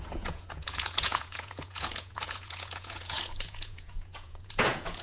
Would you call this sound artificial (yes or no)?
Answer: yes